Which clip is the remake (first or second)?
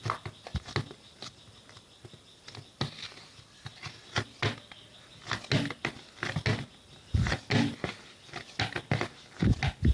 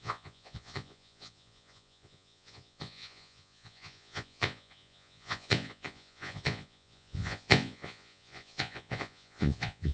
second